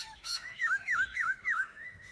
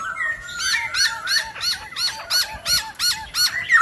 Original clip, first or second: second